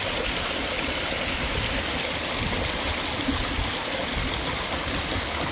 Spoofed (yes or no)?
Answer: no